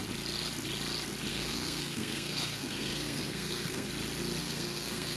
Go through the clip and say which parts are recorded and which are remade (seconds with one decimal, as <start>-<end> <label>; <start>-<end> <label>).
0.0-1.3 recorded; 1.3-3.9 remade; 3.9-4.4 recorded; 4.4-5.2 remade